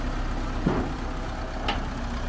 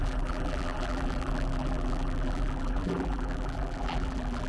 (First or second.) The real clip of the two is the first